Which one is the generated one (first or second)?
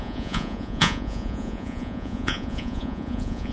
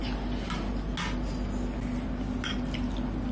first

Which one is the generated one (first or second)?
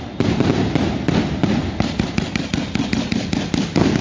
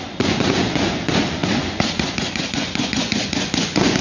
second